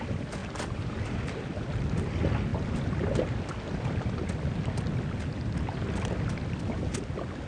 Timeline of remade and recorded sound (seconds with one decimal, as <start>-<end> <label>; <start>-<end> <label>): 0.0-7.5 recorded

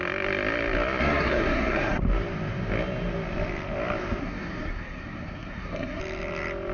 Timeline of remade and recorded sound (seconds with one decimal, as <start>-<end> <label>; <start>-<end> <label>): 0.0-1.0 recorded; 1.0-2.0 remade; 2.0-4.2 recorded; 4.2-6.0 remade; 6.0-6.7 recorded

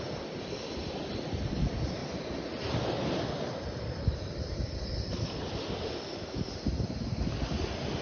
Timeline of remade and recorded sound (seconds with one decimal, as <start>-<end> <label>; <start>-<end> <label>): 0.0-8.0 recorded